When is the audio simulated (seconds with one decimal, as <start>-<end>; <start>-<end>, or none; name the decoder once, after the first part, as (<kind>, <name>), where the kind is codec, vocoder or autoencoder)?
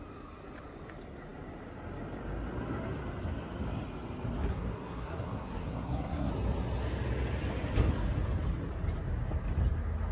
4.4-6.3 (codec, SNAC)